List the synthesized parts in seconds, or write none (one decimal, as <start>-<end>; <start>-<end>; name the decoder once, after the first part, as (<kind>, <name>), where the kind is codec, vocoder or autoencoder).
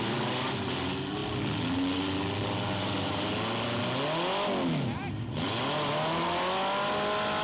none